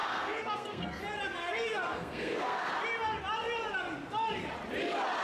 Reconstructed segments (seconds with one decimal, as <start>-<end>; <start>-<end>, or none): 0.0-1.0; 1.4-2.7